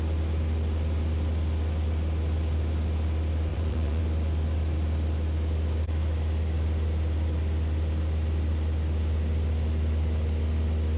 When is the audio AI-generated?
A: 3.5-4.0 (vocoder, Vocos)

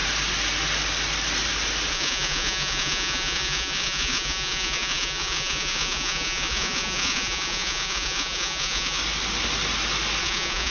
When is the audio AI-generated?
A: 1.9-9.0 (vocoder, Vocos); 10.2-10.7

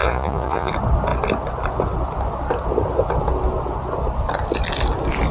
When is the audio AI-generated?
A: 0.0-0.7 (vocoder, Vocos)

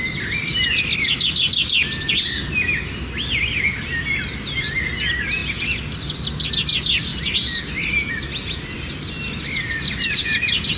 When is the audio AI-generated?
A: none

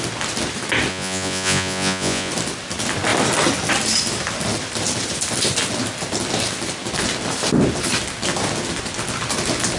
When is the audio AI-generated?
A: 0.9-2.3 (vocoder, Vocos)